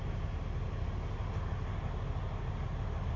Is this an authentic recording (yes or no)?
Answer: yes